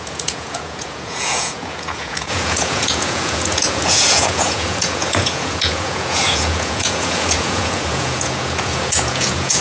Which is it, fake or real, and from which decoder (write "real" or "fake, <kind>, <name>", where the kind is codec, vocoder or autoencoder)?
fake, vocoder, Vocos